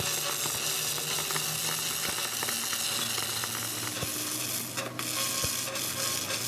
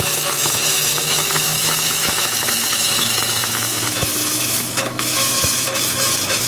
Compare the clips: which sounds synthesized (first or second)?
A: second